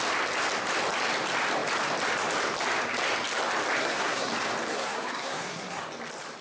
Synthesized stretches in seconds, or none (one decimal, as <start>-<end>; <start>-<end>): 3.8-4.3; 4.7-5.8